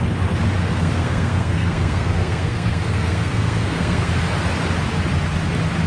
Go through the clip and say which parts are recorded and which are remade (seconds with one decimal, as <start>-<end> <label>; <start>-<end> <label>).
0.0-0.6 recorded; 0.6-4.1 remade; 4.1-5.9 recorded